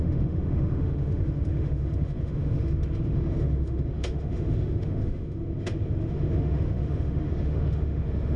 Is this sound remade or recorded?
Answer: remade